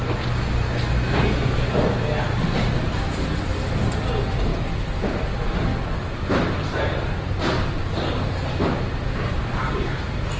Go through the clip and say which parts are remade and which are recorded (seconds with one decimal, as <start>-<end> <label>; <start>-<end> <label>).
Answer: 0.0-10.4 recorded